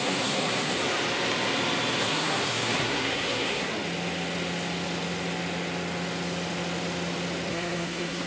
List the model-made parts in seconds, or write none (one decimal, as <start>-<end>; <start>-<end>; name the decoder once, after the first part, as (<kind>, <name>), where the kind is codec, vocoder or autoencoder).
0.0-0.7 (codec, SNAC); 2.0-3.7; 7.5-8.3